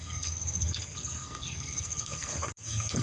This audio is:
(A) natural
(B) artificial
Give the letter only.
B